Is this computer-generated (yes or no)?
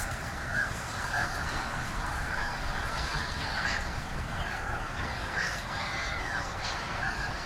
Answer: yes